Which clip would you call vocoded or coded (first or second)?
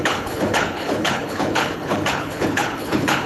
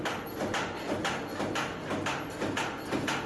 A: first